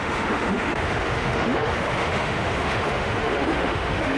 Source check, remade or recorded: remade